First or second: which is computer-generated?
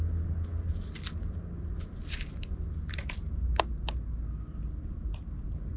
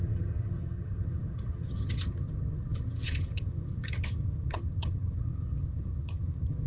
second